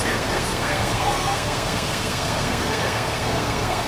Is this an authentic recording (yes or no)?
no